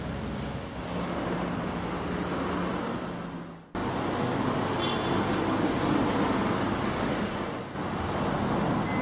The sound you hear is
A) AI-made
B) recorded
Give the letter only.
B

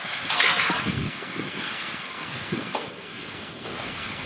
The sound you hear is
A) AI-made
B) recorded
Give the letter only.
A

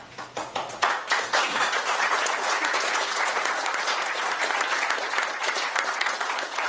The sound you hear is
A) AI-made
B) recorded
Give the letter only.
A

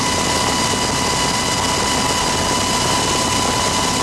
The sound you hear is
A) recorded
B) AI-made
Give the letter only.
A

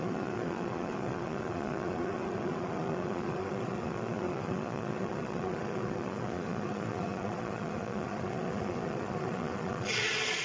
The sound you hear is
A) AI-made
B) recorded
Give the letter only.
A